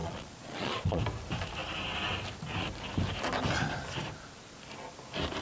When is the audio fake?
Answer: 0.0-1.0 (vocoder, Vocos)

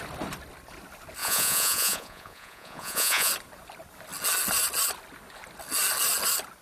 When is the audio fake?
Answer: 1.2-3.3 (vocoder, Vocos)

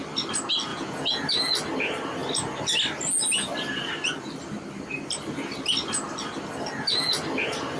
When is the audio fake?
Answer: 0.7-1.3 (vocoder, Vocos)

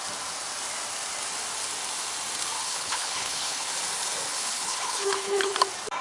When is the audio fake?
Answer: 2.6-3.7 (codec, HILCodec); 4.3-5.5